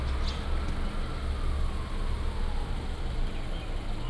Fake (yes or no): no